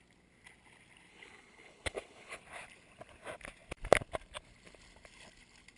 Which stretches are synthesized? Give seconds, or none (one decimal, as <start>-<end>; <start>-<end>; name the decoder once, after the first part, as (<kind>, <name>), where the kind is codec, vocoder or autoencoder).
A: 1.1-2.4 (codec, HILCodec)